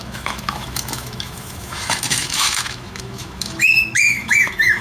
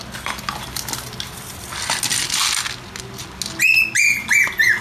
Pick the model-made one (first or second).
first